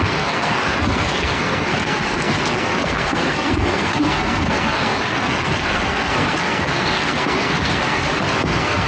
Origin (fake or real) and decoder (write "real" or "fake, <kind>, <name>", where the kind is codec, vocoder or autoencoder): fake, codec, SNAC